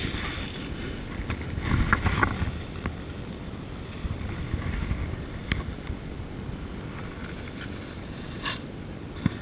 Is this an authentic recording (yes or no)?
yes